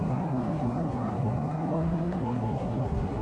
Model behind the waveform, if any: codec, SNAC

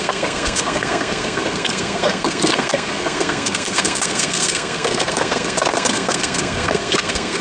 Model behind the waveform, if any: codec, SNAC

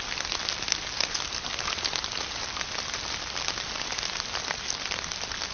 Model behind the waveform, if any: none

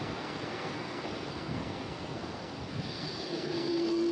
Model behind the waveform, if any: codec, SNAC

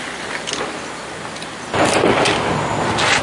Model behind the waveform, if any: none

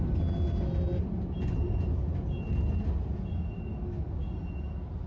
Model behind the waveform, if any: none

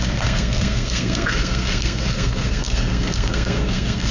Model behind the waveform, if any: codec, SNAC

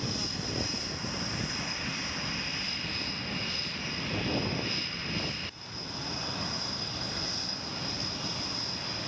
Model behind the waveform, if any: none